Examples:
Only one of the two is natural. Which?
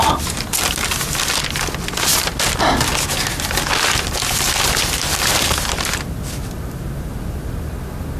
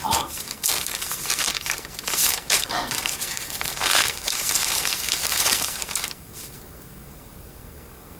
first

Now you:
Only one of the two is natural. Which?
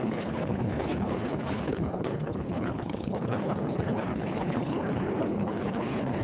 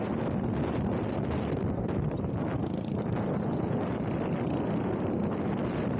second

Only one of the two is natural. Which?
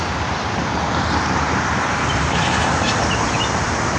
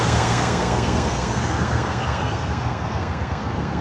first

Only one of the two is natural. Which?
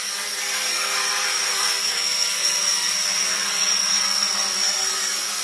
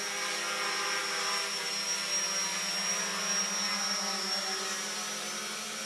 second